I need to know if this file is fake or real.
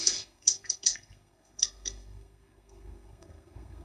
fake